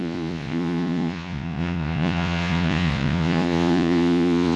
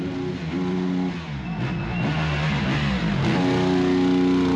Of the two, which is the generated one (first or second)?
first